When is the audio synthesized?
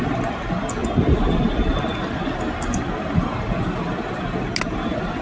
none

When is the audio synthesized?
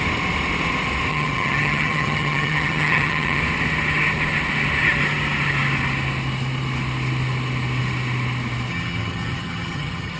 1.1-3.4 (vocoder, HiFi-GAN); 8.7-10.2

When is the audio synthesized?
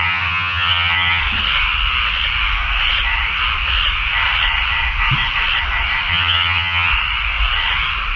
0.0-1.2 (vocoder, HiFi-GAN); 6.1-6.9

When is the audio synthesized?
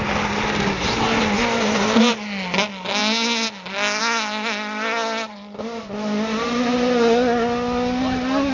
none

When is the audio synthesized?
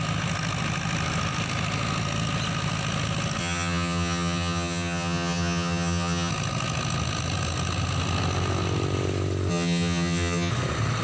3.4-6.3 (vocoder, HiFi-GAN); 9.5-10.5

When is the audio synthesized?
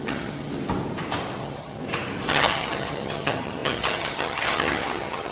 0.0-0.5 (vocoder, HiFi-GAN); 1.4-1.8; 2.3-5.3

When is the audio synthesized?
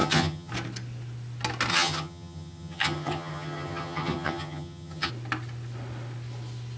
0.0-0.5 (vocoder, HiFi-GAN); 1.7-5.1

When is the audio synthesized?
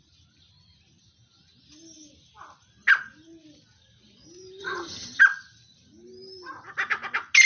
4.6-5.2 (vocoder, HiFi-GAN)